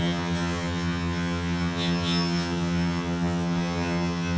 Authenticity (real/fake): fake